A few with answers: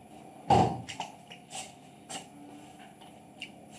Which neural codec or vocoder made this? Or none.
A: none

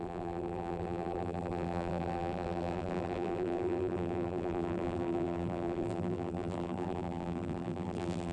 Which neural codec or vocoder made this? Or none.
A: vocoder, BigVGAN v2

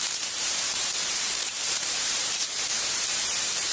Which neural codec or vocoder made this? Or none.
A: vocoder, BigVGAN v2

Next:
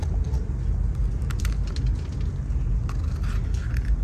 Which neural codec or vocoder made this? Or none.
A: none